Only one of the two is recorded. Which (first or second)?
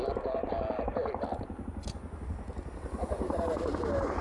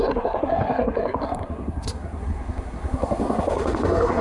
first